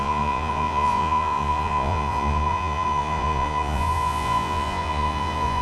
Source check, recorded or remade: remade